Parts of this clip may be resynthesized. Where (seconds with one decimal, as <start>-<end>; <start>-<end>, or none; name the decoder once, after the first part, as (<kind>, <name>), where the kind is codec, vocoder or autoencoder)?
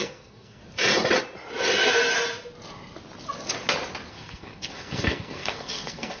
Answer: 0.0-0.6 (codec, SNAC); 4.1-6.2